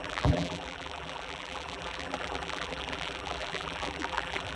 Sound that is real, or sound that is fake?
fake